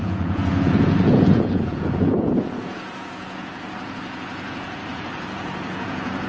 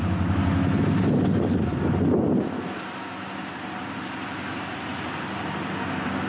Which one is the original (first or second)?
second